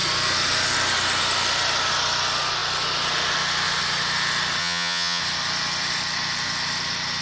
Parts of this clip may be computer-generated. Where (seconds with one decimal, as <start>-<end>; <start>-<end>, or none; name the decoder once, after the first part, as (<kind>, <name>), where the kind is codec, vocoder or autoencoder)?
4.6-5.2 (vocoder, HiFi-GAN)